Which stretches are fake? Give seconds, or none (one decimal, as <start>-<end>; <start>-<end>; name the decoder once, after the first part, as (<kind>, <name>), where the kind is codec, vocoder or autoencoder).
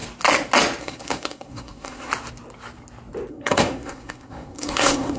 0.8-2.1 (codec, SNAC); 3.3-5.2